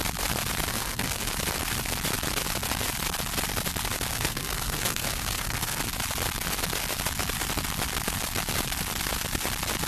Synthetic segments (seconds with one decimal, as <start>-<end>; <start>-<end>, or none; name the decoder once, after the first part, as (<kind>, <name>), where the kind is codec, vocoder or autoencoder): 0.7-1.3 (codec, SNAC); 4.1-5.8

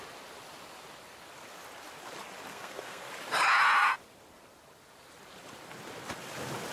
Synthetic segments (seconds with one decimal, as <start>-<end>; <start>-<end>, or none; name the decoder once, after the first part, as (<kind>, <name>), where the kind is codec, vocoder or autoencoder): 2.5-3.1 (codec, SNAC)

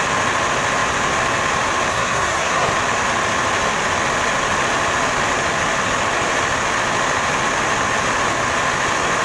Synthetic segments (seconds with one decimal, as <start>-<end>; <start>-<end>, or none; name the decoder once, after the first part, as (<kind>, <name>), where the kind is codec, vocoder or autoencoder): 1.9-2.7 (codec, SNAC)

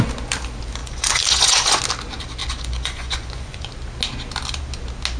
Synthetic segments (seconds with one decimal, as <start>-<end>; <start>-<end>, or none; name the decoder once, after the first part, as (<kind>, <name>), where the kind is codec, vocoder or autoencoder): 0.8-1.8 (vocoder, Vocos); 2.4-3.7